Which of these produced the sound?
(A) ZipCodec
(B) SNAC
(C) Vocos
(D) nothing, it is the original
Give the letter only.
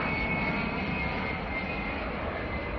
D